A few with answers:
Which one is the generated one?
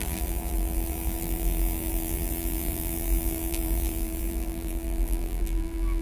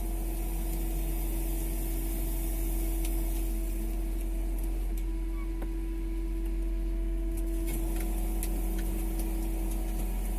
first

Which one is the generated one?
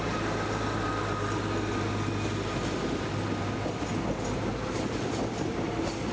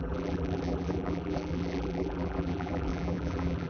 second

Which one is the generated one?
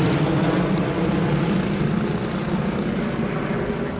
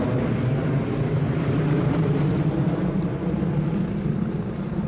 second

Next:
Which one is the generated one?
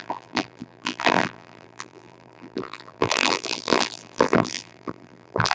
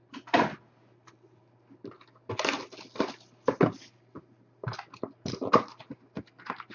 first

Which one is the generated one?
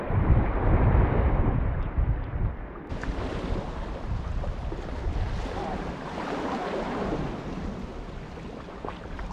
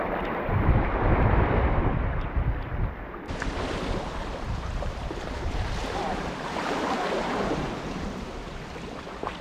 second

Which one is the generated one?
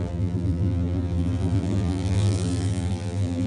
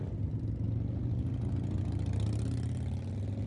first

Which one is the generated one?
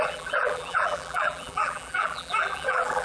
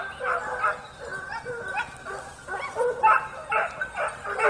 first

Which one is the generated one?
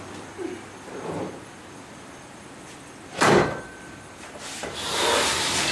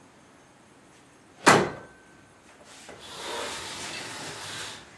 first